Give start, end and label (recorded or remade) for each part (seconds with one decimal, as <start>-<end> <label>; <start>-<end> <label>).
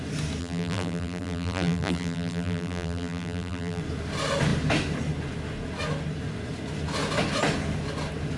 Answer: 0.0-0.4 recorded; 0.4-3.8 remade; 3.8-8.4 recorded